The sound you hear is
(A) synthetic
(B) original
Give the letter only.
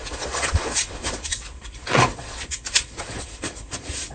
A